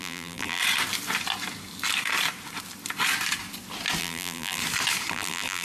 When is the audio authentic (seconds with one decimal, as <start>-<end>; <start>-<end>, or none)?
0.6-4.0; 4.6-5.1